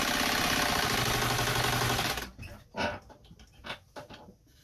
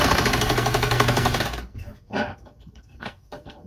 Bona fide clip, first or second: first